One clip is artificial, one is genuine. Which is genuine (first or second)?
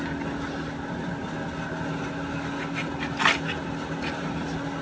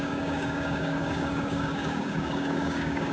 first